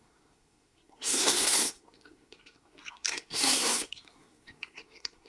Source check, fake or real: fake